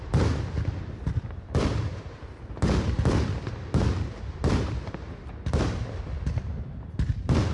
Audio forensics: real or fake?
real